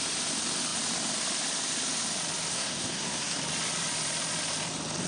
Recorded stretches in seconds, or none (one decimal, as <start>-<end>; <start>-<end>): 0.0-2.5; 3.4-5.1